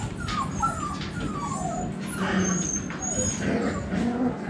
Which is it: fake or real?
real